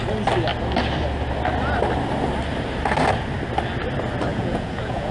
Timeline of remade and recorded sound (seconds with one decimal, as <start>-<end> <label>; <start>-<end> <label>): 0.0-4.3 recorded; 4.3-5.1 remade